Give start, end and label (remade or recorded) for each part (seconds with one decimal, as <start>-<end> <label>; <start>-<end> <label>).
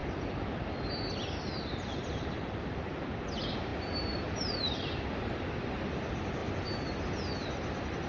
0.0-3.1 remade; 3.1-3.7 recorded; 3.7-4.6 remade; 4.6-6.4 recorded; 6.4-8.1 remade